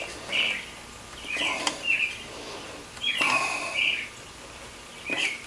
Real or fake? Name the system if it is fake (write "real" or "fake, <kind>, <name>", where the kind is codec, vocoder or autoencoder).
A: real